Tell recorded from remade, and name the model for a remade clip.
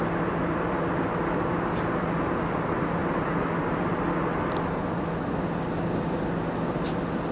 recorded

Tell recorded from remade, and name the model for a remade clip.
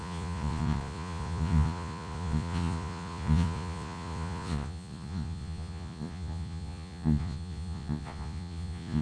remade, vocoder, Vocos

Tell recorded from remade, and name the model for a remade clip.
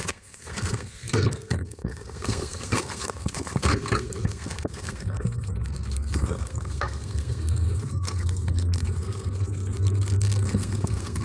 remade, codec, SNAC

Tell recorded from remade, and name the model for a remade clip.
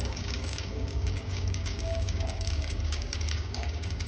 remade, codec, DAC